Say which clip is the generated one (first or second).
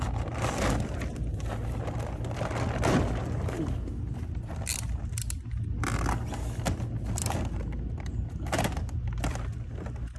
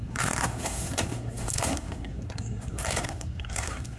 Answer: second